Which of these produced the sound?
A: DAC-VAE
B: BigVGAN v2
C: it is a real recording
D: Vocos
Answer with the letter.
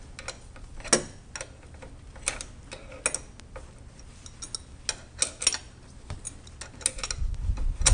C